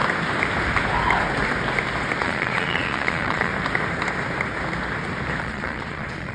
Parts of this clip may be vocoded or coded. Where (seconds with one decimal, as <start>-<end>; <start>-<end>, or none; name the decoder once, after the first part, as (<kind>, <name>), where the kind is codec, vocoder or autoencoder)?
2.2-3.5 (vocoder, Vocos); 5.4-6.3